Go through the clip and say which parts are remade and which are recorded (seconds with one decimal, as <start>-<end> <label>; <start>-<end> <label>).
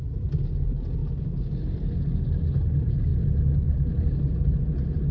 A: 0.0-5.1 recorded